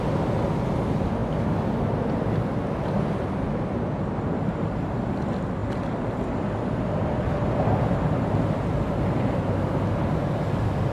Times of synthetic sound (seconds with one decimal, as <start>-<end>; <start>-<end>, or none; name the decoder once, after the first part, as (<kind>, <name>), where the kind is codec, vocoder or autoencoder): none